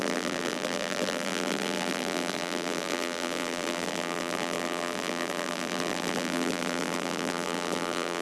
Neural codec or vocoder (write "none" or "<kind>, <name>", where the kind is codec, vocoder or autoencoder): vocoder, BigVGAN v2